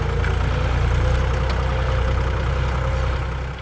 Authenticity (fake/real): real